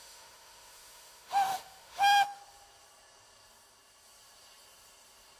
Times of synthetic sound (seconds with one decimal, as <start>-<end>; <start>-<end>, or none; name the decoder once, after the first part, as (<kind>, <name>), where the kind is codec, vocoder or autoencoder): 0.0-2.4 (autoencoder, DAC-VAE)